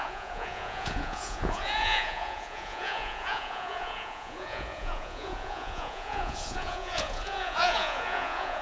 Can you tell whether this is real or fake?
fake